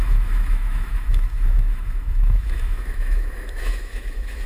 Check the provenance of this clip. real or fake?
fake